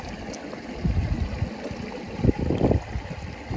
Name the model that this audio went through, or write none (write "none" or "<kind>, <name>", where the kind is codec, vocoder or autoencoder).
none